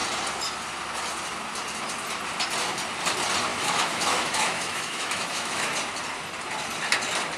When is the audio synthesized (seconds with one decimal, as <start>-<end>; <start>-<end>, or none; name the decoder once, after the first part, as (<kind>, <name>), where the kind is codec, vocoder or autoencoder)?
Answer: 3.5-5.7 (autoencoder, DAC-VAE)

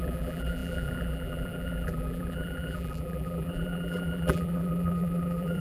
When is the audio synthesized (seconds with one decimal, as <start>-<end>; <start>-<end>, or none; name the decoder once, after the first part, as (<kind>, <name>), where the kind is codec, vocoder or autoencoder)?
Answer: 0.0-5.6 (vocoder, BigVGAN v2)

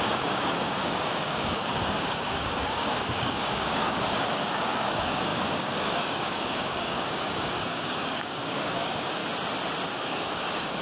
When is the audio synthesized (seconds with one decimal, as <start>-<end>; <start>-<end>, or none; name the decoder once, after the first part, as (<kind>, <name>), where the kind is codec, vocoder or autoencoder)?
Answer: 0.0-9.2 (codec, DAC); 9.9-10.8

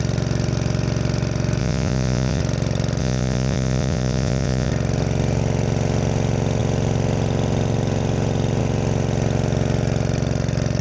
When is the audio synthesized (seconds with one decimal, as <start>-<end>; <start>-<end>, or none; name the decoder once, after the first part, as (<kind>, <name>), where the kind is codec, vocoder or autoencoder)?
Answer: 1.6-2.4 (vocoder, Vocos); 3.0-4.7

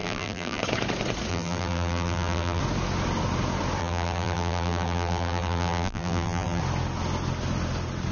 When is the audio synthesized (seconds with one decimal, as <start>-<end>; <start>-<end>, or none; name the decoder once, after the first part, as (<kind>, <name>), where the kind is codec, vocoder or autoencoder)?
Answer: 0.0-0.6 (vocoder, BigVGAN v2); 1.3-2.6; 3.8-6.6

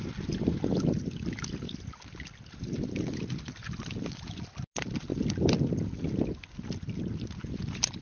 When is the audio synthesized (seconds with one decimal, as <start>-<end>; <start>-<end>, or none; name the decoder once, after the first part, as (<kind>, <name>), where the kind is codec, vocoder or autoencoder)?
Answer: none